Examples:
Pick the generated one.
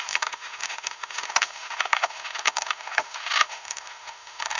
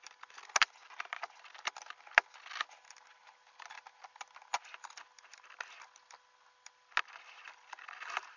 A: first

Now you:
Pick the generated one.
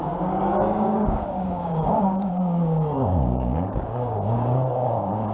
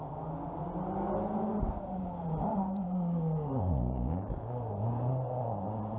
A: first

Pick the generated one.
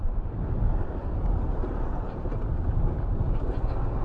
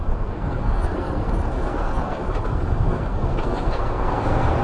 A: second